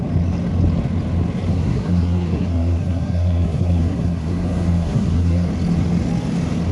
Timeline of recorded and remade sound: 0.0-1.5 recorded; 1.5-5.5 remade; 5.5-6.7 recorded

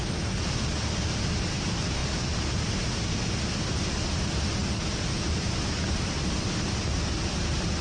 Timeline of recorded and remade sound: 0.0-7.8 recorded

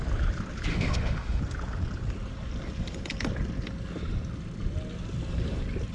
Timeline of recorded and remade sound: 0.0-0.7 recorded; 0.7-1.4 remade; 1.4-5.9 recorded